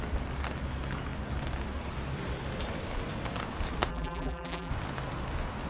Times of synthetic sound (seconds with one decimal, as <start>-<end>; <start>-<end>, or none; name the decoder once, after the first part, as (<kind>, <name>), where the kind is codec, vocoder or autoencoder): 3.9-4.7 (vocoder, BigVGAN v2)